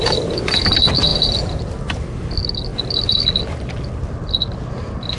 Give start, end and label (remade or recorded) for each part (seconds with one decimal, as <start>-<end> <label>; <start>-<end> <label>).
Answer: 0.0-5.2 recorded